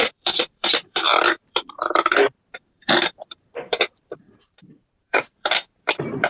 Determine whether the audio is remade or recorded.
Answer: remade